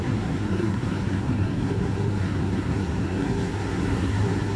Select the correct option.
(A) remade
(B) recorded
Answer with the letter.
A